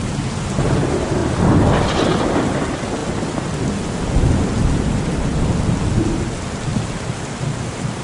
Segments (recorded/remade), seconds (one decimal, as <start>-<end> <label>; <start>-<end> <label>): 0.0-8.0 recorded